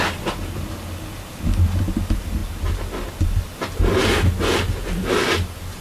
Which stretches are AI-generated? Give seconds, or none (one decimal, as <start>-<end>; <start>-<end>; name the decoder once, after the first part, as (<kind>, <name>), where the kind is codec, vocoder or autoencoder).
none